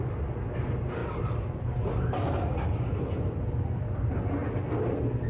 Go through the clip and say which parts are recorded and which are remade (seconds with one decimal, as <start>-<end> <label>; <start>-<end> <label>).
0.0-1.0 recorded; 1.0-1.8 remade; 1.8-5.3 recorded